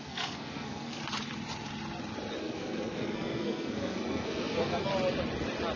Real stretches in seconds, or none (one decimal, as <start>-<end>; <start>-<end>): 1.0-2.4; 4.9-5.8